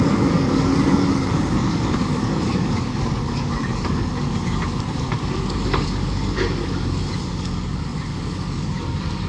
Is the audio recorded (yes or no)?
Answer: no